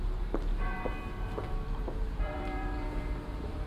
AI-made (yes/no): yes